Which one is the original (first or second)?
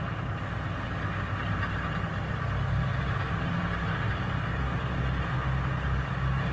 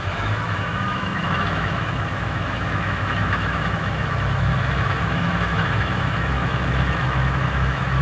first